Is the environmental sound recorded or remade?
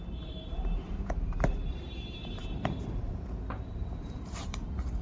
remade